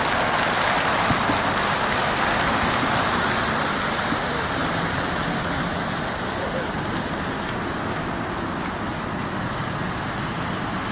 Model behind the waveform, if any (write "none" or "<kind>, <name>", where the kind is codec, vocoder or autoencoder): none